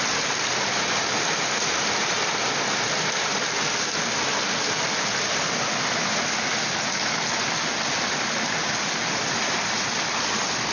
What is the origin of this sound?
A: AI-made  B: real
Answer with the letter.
B